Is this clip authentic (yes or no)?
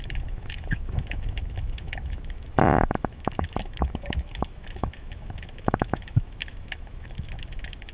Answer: no